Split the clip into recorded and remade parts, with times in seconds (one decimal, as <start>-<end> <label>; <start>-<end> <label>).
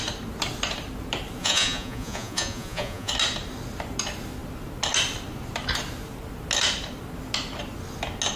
0.0-1.4 recorded; 1.4-3.1 remade; 3.1-8.4 recorded